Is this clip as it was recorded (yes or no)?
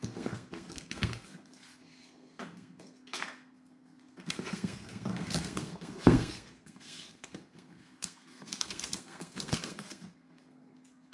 no